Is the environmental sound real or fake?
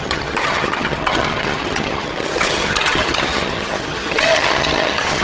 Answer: fake